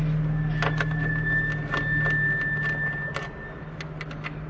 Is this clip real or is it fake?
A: real